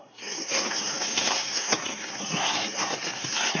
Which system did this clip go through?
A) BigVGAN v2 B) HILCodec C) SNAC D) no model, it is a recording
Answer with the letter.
C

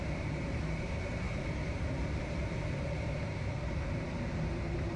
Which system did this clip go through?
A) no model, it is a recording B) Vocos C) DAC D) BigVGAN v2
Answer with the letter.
D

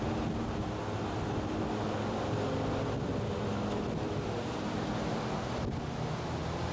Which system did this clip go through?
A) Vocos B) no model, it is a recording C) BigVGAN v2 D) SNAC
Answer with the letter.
B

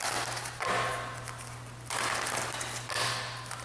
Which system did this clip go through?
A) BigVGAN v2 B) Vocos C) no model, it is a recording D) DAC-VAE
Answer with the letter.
C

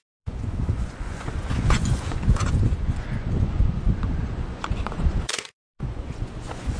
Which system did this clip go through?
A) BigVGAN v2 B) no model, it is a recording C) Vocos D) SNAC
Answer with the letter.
C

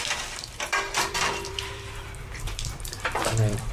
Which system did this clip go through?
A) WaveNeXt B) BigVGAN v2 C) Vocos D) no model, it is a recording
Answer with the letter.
B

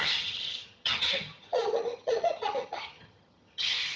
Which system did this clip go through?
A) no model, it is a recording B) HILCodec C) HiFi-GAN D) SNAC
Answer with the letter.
C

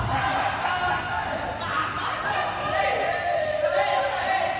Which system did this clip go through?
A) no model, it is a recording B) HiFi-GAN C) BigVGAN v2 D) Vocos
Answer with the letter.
C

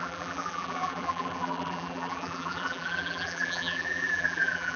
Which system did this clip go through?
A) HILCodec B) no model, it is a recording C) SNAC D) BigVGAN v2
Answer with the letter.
D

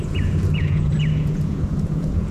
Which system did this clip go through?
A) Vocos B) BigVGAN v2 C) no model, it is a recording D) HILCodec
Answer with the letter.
A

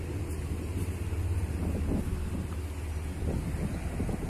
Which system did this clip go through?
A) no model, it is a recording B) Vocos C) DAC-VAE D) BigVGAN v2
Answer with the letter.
A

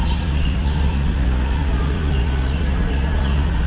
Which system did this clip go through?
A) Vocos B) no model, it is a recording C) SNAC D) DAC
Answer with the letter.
A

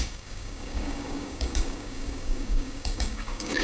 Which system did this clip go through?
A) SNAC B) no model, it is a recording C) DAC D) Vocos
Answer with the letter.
C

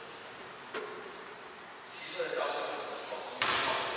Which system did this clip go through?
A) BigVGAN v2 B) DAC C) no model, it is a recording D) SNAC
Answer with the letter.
C